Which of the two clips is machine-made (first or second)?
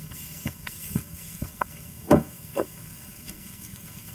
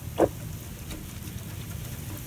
first